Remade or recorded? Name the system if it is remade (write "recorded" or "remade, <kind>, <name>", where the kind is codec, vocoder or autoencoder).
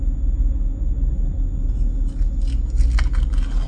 recorded